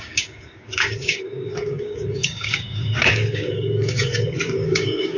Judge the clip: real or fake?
fake